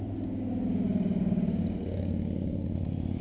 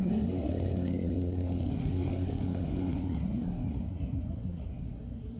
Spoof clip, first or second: second